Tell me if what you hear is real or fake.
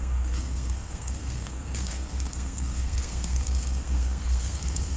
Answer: fake